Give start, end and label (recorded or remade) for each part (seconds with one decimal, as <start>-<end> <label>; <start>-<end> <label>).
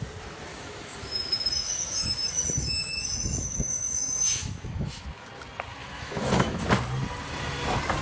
0.0-0.5 recorded; 0.5-5.1 remade; 5.1-5.8 recorded; 5.8-6.7 remade; 6.7-8.0 recorded